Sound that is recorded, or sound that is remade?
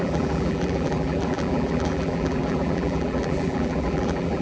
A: remade